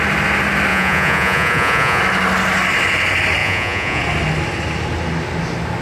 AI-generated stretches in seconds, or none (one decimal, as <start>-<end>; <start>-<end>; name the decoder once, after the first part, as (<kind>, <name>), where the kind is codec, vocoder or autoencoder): 0.7-2.0 (vocoder, Vocos); 3.4-4.0

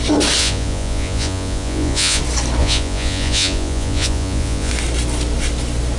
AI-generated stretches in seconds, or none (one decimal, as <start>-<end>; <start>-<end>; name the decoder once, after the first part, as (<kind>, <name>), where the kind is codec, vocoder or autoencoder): 0.4-2.2 (vocoder, Vocos); 2.6-4.7

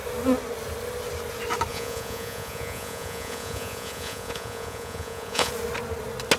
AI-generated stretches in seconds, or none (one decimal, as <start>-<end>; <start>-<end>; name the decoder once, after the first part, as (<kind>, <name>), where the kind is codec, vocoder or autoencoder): 1.7-5.5 (vocoder, Vocos)

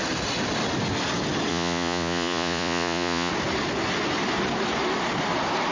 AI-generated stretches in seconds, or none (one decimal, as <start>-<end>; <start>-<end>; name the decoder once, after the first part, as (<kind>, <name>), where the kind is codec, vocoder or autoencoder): 1.5-3.3 (vocoder, Vocos)

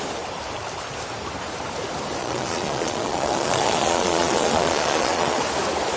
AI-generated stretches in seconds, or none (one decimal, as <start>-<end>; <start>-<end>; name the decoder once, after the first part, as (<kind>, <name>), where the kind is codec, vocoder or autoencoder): 2.2-5.4 (vocoder, Vocos)

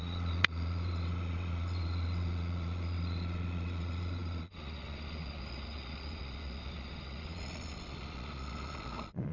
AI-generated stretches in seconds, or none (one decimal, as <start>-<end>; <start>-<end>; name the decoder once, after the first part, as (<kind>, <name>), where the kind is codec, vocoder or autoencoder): 0.0-9.3 (vocoder, Vocos)

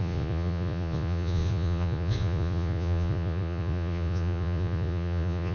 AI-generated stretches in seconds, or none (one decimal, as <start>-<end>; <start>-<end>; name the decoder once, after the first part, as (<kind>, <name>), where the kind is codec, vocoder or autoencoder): 0.0-5.5 (vocoder, Vocos)